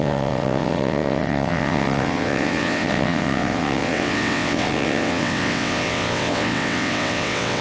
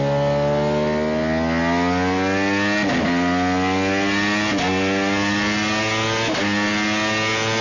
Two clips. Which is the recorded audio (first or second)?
second